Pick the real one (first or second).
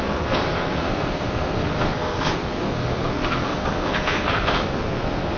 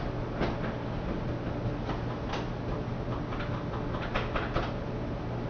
second